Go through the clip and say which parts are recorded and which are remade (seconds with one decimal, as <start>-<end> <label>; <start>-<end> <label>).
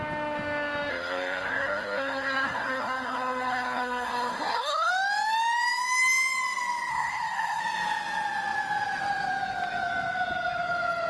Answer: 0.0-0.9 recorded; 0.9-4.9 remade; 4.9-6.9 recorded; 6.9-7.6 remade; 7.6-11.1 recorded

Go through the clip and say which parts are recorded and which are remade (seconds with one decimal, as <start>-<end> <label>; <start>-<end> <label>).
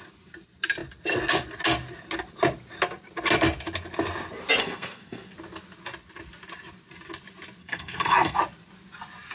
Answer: 0.0-4.6 recorded; 4.6-5.3 remade; 5.3-7.6 recorded; 7.6-8.4 remade; 8.4-9.3 recorded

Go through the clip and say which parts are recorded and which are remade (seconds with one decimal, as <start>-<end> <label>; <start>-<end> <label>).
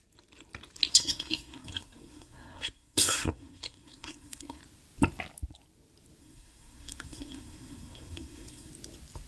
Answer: 0.0-0.9 recorded; 0.9-4.6 remade; 4.6-6.2 recorded; 6.2-8.7 remade; 8.7-9.3 recorded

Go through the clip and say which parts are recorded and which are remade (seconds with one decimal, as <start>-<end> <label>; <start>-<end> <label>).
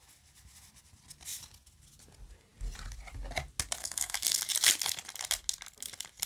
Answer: 0.0-3.8 recorded; 3.8-4.4 remade; 4.4-6.3 recorded